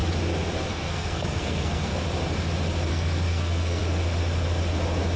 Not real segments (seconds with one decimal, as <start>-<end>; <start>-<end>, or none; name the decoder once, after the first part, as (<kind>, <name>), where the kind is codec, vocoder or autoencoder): 0.7-1.9 (codec, SNAC); 2.9-3.8